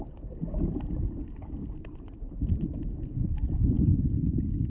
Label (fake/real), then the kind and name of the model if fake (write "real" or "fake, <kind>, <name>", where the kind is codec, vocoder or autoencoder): real